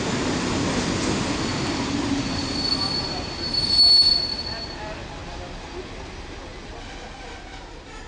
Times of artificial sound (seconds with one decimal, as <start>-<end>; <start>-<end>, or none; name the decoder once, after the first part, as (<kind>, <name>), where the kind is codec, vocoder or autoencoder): none